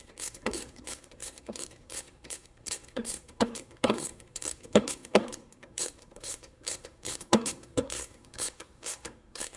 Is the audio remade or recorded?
remade